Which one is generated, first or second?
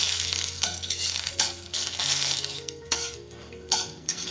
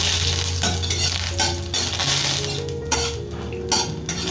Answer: first